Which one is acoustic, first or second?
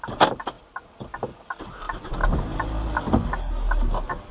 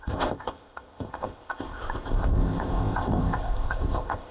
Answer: first